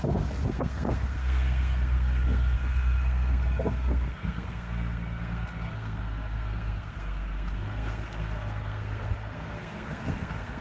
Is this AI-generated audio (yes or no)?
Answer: yes